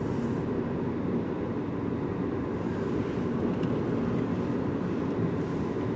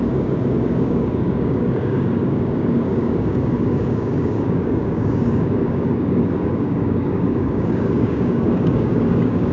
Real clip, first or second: first